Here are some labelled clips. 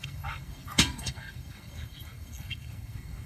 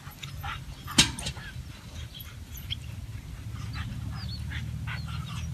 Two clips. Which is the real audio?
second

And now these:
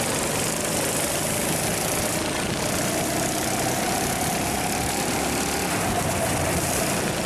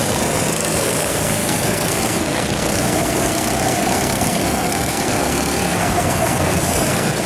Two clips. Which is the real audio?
first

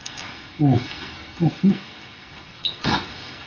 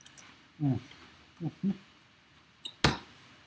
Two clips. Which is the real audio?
second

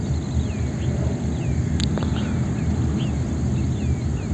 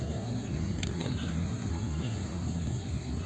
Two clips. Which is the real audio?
first